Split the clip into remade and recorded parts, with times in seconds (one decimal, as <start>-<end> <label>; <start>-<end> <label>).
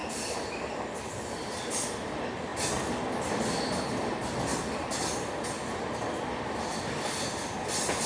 0.0-8.1 recorded